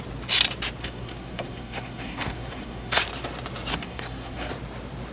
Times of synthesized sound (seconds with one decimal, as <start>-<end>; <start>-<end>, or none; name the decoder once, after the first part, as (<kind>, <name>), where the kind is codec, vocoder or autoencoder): 0.8-3.0 (codec, SNAC); 3.7-4.5

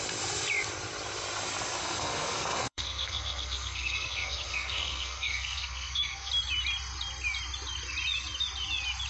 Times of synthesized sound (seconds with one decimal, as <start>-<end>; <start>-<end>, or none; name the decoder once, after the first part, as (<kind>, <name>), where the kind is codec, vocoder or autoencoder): 1.8-6.3 (codec, SNAC)

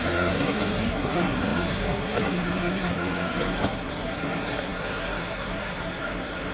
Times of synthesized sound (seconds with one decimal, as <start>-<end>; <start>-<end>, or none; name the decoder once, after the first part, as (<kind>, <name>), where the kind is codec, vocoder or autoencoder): 0.0-6.5 (codec, SNAC)

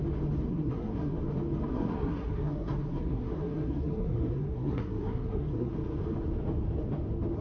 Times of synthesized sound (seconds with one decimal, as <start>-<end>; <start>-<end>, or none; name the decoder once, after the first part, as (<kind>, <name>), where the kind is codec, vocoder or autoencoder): 0.5-1.2 (codec, SNAC); 1.7-5.7

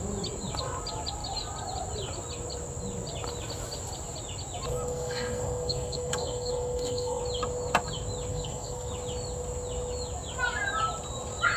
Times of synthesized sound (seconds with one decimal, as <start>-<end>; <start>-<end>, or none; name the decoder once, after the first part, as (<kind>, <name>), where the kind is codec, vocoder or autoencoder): 4.7-7.2 (codec, SNAC); 8.3-8.9